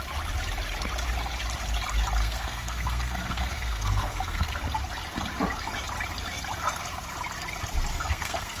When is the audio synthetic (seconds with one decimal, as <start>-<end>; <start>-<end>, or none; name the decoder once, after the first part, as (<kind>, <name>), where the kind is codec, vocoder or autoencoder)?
2.2-4.5 (codec, SNAC); 7.9-8.6